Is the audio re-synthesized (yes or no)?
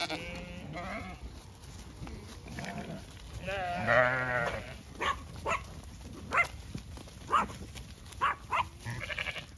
no